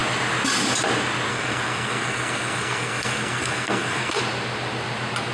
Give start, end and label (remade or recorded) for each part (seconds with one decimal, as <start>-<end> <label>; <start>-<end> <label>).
0.0-1.3 recorded; 1.3-4.2 remade; 4.2-5.3 recorded